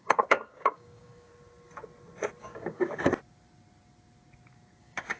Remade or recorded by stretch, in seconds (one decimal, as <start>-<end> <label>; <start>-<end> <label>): 0.0-1.3 remade; 1.3-2.4 recorded; 2.4-3.1 remade; 3.1-4.8 recorded; 4.8-5.2 remade

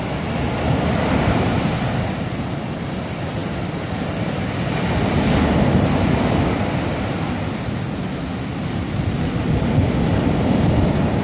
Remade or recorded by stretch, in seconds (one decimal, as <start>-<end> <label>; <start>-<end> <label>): 0.0-11.2 recorded